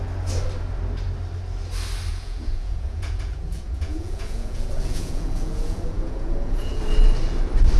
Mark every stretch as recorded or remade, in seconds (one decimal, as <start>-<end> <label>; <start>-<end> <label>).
0.0-2.1 recorded; 2.1-6.8 remade; 6.8-7.8 recorded